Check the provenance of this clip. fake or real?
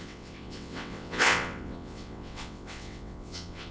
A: fake